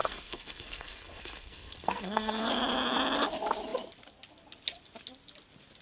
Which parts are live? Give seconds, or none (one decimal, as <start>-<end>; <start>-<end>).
2.5-5.8